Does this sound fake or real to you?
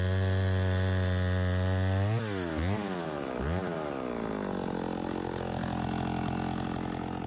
real